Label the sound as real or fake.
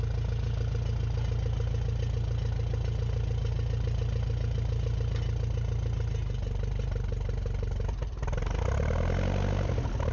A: real